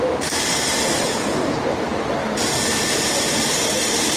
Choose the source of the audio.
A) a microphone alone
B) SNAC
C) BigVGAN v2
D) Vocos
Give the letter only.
C